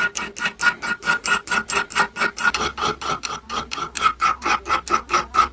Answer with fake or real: real